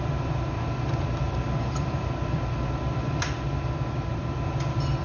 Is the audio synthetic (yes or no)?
yes